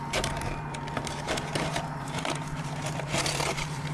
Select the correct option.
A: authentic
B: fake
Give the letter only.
B